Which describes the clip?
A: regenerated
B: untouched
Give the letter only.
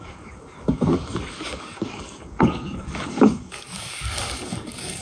A